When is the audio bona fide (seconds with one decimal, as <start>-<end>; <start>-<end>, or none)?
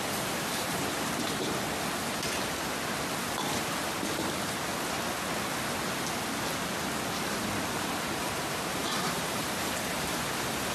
0.0-8.2; 9.4-10.7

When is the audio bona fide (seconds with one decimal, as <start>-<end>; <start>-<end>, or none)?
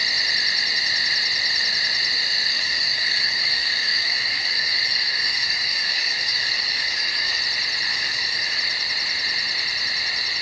0.0-2.5; 7.4-7.9; 8.6-10.4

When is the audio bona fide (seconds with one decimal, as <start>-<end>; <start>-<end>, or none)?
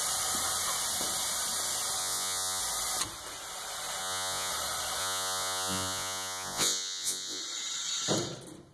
0.0-2.0; 2.6-4.0; 4.5-5.0; 7.4-8.7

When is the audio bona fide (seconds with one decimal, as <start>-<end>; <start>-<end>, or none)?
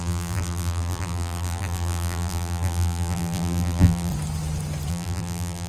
4.1-4.9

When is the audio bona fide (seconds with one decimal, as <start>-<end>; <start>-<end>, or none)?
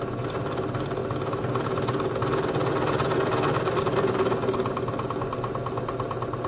0.0-6.5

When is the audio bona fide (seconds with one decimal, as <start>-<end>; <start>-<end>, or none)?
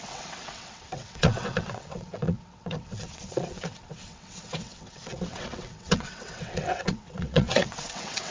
none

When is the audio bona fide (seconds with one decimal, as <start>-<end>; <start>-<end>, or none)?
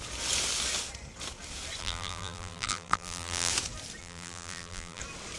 0.0-1.8; 3.5-4.0; 5.0-5.4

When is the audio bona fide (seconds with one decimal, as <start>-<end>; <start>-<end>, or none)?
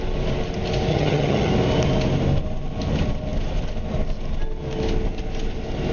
0.0-0.9; 1.5-5.9